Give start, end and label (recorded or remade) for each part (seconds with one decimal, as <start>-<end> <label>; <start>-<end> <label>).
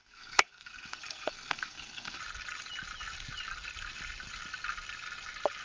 0.0-2.2 remade; 2.2-5.6 recorded